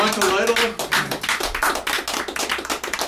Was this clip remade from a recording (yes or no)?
no